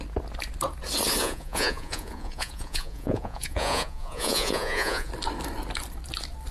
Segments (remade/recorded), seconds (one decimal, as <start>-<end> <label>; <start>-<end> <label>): 0.0-1.2 recorded; 1.2-5.1 remade; 5.1-6.5 recorded